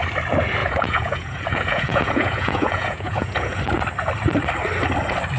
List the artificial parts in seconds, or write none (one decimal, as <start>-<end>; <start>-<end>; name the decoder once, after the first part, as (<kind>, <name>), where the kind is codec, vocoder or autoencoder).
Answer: 0.6-3.6 (vocoder, Vocos)